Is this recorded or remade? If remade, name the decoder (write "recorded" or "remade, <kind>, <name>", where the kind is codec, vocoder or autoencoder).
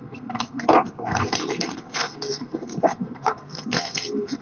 remade, codec, SNAC